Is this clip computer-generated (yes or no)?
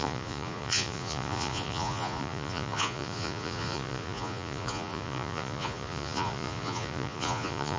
yes